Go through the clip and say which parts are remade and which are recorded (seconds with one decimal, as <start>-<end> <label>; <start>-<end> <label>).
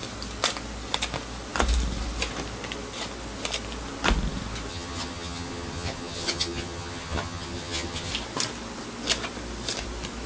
0.0-4.7 recorded; 4.7-8.1 remade; 8.1-10.3 recorded